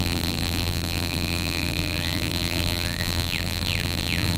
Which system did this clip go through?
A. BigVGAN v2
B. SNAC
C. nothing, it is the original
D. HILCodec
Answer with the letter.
A